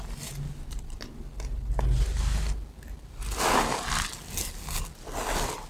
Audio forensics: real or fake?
real